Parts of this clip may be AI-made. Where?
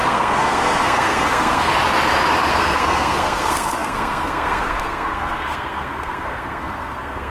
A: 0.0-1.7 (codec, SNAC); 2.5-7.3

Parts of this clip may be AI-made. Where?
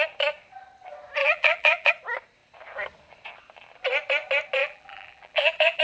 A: 1.2-1.9 (vocoder, BigVGAN v2); 4.6-5.8